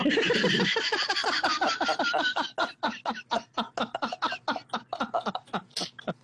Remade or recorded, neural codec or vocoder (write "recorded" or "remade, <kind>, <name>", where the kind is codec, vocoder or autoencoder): recorded